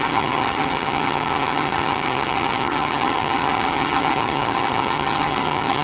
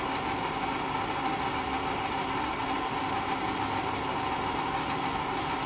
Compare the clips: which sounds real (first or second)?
second